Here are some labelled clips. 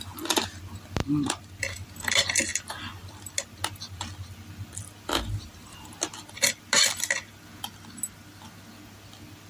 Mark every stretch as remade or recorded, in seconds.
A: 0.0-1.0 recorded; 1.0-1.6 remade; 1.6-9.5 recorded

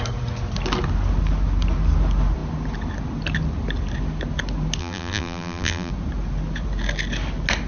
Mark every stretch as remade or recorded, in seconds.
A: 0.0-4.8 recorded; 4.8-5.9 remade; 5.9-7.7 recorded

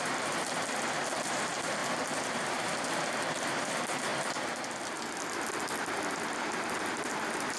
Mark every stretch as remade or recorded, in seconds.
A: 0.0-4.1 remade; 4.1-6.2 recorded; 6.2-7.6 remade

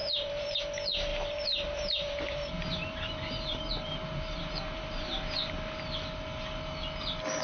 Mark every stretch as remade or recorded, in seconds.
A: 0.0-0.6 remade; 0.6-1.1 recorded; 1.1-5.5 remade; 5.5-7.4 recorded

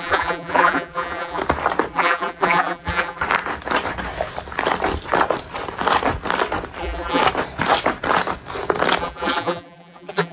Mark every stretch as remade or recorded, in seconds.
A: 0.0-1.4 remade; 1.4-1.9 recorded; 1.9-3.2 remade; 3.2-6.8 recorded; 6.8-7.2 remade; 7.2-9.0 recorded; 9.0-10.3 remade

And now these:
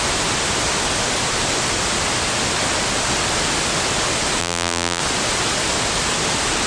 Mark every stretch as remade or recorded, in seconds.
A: 0.0-4.4 recorded; 4.4-5.0 remade; 5.0-6.7 recorded

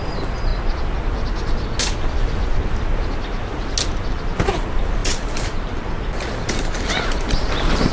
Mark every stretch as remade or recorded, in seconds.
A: 0.0-0.5 remade; 0.5-4.1 recorded; 4.1-7.9 remade